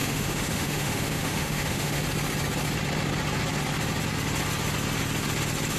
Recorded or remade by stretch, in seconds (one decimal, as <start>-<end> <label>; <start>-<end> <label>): 0.0-2.0 remade; 2.0-5.8 recorded